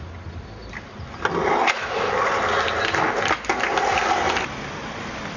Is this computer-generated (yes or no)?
no